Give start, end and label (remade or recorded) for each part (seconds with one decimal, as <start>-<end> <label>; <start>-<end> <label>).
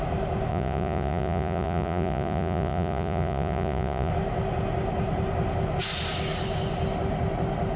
0.0-0.5 recorded; 0.5-4.1 remade; 4.1-7.8 recorded